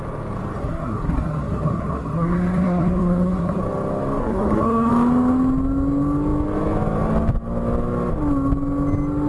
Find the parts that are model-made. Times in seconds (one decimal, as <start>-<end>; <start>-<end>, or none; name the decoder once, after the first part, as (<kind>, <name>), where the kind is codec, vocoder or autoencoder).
0.6-3.6 (codec, SNAC); 4.2-4.9